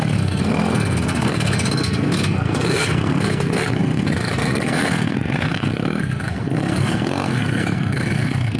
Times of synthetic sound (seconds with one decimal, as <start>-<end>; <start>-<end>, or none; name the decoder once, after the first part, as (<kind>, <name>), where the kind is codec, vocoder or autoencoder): 0.0-8.6 (codec, SNAC)

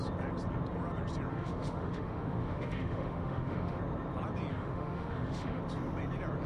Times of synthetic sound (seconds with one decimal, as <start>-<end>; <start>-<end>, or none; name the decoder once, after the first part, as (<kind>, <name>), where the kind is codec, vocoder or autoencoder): 1.3-3.8 (autoencoder, DAC-VAE); 4.5-5.6

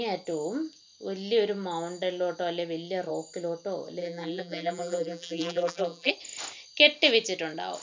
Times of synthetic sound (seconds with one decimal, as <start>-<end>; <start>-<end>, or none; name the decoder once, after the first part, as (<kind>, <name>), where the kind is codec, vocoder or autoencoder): 4.0-6.1 (vocoder, BigVGAN v2)

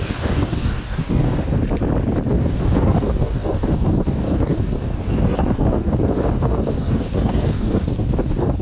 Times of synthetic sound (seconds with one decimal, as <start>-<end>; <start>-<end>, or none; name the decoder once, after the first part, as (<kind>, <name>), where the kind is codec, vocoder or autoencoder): 0.0-1.6 (codec, DAC); 2.3-8.6

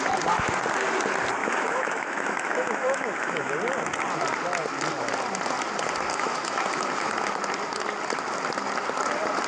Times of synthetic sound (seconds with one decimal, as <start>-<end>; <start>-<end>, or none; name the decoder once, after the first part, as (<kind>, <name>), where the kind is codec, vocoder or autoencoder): 1.4-3.5 (autoencoder, DAC-VAE); 6.1-7.1

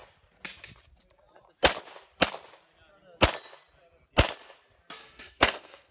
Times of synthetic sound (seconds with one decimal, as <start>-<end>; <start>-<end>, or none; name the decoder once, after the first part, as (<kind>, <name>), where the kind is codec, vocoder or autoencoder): 5.0-5.9 (codec, SNAC)

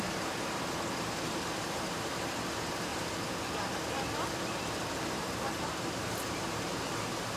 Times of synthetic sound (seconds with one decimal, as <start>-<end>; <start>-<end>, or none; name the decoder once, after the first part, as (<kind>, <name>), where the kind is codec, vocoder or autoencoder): 0.0-2.9 (vocoder, BigVGAN v2); 5.1-7.4

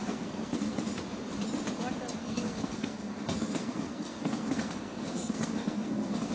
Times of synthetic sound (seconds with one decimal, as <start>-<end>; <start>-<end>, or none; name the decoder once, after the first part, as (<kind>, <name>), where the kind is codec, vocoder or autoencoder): 0.0-1.0 (codec, SNAC); 2.2-6.3